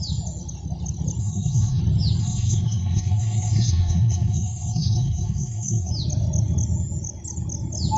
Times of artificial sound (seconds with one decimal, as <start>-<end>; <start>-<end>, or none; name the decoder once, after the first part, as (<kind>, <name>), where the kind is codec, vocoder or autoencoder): 1.2-1.8 (codec, SNAC); 2.2-5.9